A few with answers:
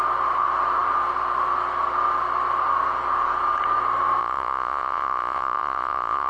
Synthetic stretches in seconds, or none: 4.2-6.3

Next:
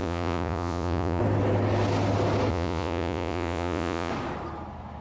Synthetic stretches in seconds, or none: 0.0-1.2; 2.5-4.1

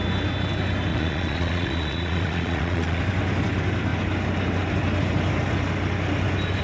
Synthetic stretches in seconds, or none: 0.9-3.0

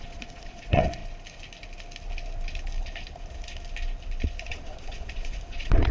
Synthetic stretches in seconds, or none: 0.0-1.0; 4.5-5.9

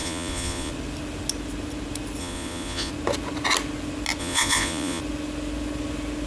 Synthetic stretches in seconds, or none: 0.0-0.7; 2.2-2.9; 4.2-5.0